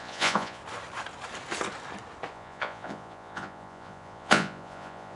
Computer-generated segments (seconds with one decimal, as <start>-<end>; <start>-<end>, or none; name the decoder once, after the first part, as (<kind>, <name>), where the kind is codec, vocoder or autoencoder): 0.0-0.6 (vocoder, Vocos); 2.3-5.2